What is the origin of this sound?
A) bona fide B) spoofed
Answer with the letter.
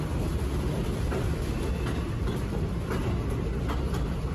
A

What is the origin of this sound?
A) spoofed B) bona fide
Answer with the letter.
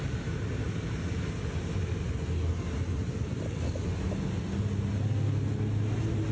B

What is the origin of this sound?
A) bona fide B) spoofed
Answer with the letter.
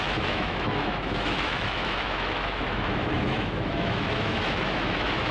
B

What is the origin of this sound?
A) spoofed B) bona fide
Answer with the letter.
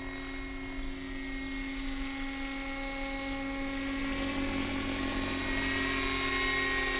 B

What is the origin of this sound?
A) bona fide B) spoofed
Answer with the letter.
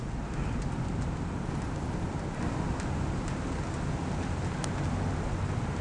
A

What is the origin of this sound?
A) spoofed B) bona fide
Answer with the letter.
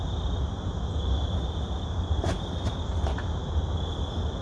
B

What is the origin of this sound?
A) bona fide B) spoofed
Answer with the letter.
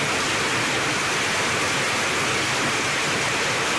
A